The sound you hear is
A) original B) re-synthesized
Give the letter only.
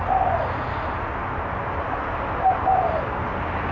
A